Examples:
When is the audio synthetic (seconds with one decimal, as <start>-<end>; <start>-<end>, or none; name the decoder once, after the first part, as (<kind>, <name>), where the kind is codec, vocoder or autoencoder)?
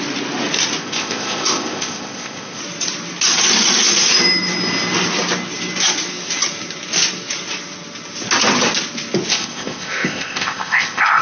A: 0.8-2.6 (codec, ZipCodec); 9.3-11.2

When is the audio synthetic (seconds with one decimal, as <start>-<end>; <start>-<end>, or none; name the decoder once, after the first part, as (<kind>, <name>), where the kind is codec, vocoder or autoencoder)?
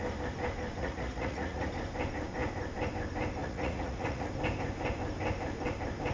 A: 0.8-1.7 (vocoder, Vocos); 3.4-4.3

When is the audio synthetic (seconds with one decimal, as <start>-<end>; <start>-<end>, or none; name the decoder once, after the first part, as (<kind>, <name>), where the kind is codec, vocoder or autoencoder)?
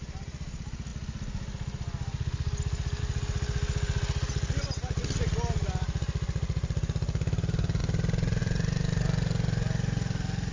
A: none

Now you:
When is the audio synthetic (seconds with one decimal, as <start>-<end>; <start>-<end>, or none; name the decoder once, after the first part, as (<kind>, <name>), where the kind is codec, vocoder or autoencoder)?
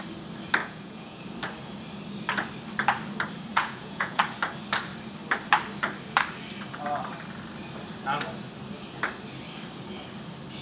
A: 0.6-1.2 (vocoder, Vocos); 3.5-4.2